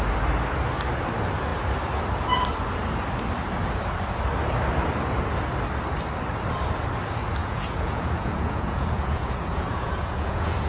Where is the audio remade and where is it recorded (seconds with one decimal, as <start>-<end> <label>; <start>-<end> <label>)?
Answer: 0.0-7.4 recorded; 7.4-10.7 remade